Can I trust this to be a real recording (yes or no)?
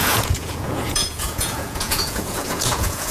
no